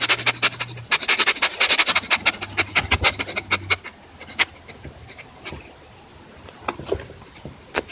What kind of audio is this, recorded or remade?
recorded